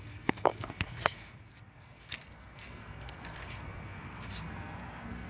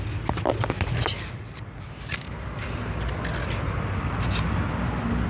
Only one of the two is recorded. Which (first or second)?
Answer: second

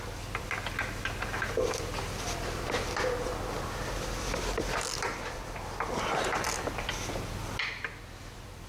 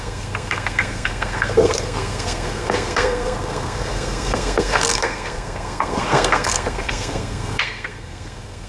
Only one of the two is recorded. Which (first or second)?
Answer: first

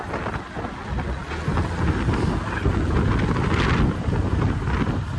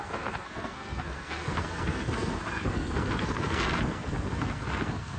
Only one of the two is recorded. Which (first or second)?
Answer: first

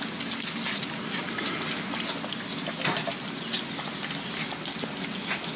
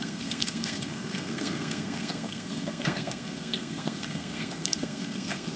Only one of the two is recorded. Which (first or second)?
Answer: first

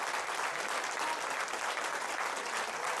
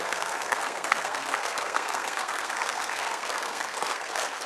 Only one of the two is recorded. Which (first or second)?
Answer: first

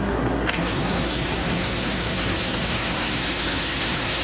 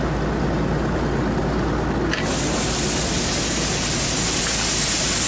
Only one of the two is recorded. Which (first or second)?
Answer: second